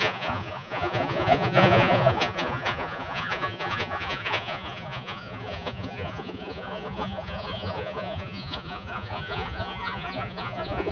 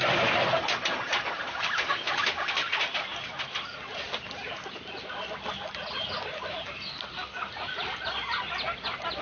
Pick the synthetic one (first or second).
first